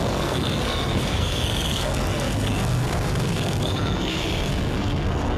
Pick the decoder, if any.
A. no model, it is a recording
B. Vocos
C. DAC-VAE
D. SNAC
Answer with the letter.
D